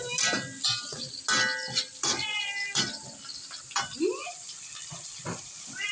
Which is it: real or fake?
real